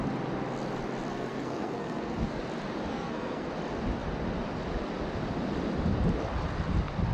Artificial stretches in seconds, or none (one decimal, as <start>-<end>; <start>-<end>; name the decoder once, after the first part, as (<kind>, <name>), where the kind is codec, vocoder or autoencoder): 1.1-2.4 (codec, SNAC); 2.9-3.5

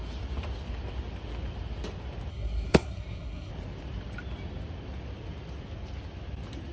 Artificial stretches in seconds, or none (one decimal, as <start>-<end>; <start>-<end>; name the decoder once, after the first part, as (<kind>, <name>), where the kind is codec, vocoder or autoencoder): 2.3-3.5 (codec, SNAC)

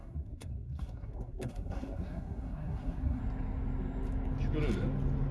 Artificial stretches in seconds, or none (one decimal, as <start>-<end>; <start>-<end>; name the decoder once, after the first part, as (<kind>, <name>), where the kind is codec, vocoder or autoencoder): 0.0-3.2 (codec, SNAC)